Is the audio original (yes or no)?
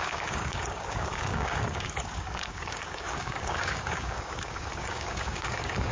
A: no